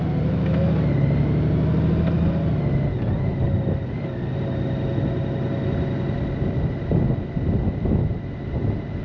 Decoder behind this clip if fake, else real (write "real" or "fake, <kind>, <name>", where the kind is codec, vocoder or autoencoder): real